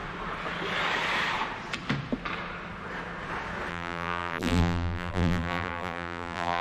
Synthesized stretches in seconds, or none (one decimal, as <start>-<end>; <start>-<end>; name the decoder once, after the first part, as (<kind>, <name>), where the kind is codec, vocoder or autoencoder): 3.7-6.6 (vocoder, BigVGAN v2)